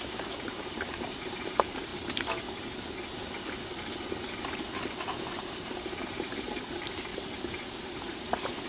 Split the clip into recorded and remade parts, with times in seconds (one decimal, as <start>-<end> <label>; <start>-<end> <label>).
0.0-1.9 remade; 1.9-5.9 recorded; 5.9-7.1 remade; 7.1-7.7 recorded; 7.7-8.7 remade

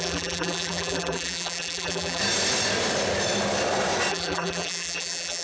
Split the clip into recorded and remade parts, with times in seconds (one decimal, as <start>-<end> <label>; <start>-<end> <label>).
0.0-2.2 remade; 2.2-4.1 recorded; 4.1-5.4 remade

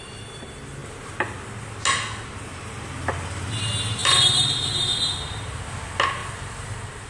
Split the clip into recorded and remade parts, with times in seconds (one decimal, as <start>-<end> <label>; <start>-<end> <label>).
0.0-6.2 recorded; 6.2-7.1 remade

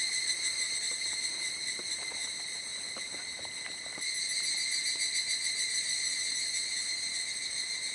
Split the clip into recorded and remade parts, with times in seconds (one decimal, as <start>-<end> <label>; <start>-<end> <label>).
0.0-2.7 remade; 2.7-6.2 recorded; 6.2-7.9 remade

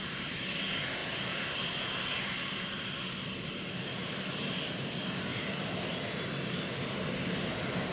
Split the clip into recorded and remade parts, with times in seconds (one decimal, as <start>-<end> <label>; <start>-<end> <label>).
0.0-1.0 recorded; 1.0-1.5 remade; 1.5-5.3 recorded; 5.3-6.0 remade; 6.0-7.9 recorded